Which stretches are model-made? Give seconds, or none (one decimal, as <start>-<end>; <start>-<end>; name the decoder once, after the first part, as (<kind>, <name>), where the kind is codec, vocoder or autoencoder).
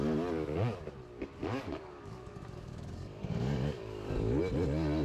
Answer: 1.4-4.4 (codec, DAC)